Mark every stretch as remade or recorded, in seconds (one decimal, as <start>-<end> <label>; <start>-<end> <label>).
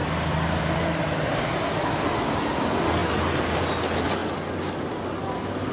0.0-5.7 recorded